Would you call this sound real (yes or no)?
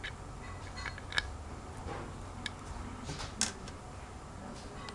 yes